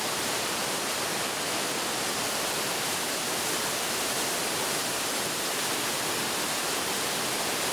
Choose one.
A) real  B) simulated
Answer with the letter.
A